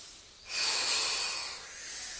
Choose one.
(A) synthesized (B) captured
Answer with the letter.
B